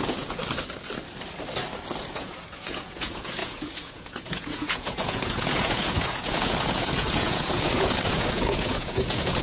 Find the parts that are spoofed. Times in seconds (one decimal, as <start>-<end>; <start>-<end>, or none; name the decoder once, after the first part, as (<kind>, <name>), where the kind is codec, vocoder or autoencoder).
0.0-0.4 (vocoder, Vocos); 2.0-9.4